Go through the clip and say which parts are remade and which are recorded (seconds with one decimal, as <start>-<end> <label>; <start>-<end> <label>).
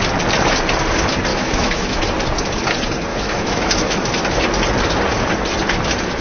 0.0-1.3 recorded; 1.3-2.0 remade; 2.0-3.1 recorded; 3.1-4.1 remade; 4.1-6.2 recorded